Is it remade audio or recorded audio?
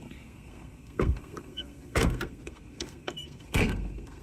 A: remade